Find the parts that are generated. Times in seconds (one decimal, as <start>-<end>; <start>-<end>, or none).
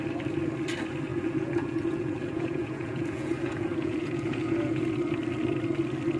1.1-4.8